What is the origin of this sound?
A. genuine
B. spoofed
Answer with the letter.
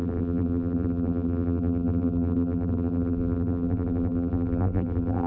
B